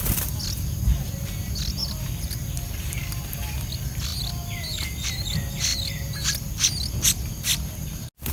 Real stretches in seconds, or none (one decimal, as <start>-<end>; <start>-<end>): 0.0-8.3